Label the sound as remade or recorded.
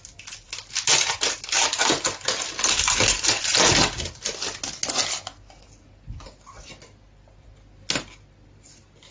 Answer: recorded